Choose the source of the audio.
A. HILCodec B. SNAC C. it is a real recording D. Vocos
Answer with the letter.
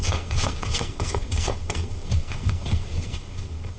B